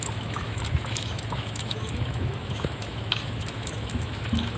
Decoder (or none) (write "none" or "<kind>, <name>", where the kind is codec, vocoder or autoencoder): autoencoder, DAC-VAE